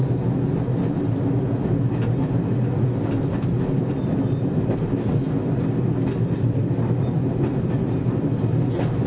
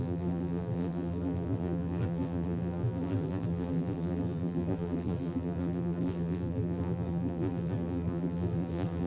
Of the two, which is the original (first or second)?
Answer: first